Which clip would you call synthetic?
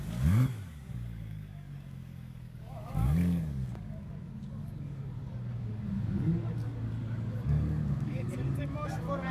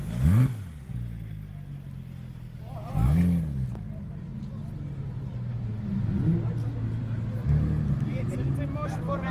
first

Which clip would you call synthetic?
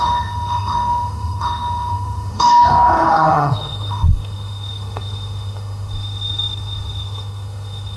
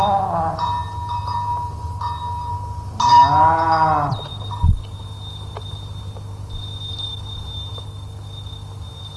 first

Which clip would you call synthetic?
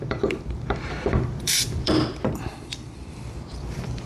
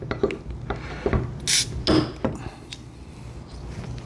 first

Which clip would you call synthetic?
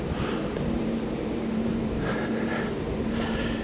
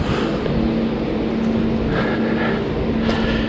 first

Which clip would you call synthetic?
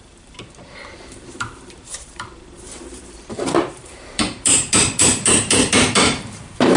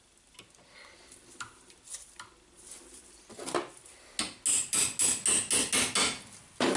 first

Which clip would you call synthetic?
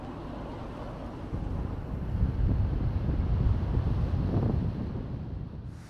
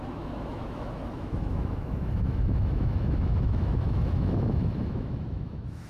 second